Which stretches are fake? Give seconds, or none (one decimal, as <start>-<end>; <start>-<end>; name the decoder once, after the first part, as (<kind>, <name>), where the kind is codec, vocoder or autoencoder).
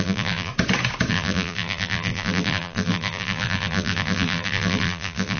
0.0-0.5 (vocoder, BigVGAN v2); 1.1-5.4